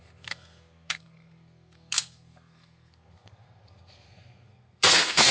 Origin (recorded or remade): remade